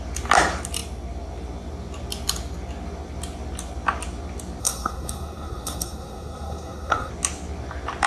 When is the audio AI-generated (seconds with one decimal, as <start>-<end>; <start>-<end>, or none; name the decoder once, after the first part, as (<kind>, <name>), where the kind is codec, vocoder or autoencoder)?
4.6-7.1 (codec, SNAC)